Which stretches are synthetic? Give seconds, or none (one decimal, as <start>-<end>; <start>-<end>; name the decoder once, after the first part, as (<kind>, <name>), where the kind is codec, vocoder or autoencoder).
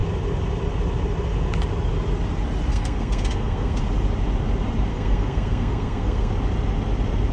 2.7-3.8 (codec, SNAC); 4.9-6.3